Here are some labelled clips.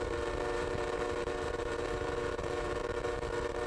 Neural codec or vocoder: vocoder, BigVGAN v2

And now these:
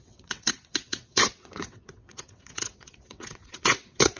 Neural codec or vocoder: vocoder, WaveNeXt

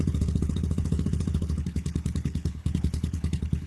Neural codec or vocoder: codec, HILCodec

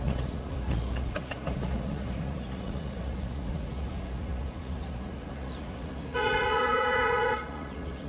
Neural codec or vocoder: vocoder, Vocos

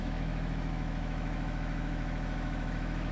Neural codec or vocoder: autoencoder, DAC-VAE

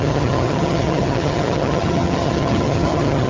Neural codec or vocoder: vocoder, HiFi-GAN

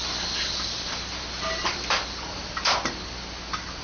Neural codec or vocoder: none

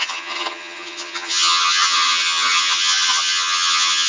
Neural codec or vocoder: vocoder, HiFi-GAN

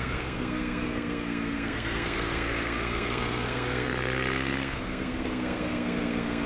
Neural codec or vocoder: codec, SNAC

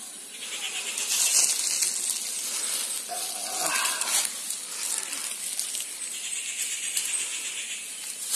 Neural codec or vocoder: none